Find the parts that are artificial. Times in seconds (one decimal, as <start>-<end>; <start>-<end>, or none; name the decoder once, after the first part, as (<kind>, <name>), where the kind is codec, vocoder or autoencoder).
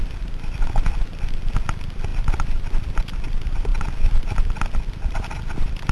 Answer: none